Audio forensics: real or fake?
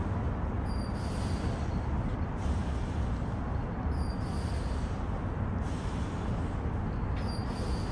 real